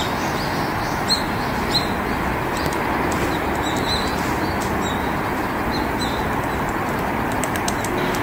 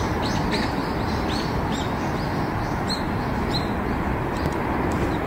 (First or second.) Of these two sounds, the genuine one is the first